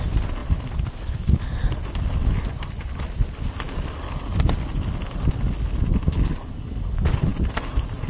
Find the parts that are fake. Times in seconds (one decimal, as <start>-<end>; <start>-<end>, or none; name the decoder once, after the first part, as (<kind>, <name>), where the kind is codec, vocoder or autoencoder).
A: none